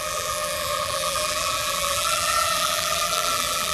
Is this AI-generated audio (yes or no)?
yes